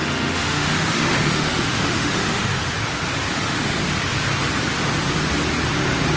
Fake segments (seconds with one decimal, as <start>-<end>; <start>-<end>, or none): 0.0-2.6; 3.2-3.8